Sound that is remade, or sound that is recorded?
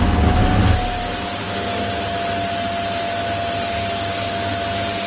recorded